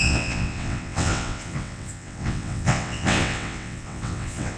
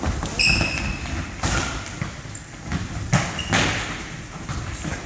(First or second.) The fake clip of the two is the first